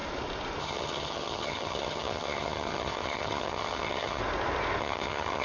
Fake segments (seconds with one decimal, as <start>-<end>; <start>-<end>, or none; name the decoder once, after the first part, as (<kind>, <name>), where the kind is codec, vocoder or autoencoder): 0.6-4.2 (vocoder, HiFi-GAN); 4.8-5.4